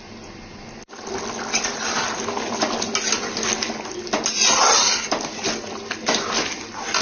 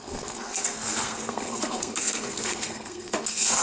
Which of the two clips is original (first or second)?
first